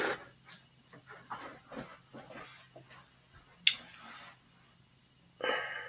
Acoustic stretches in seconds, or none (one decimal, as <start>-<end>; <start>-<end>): 0.0-5.9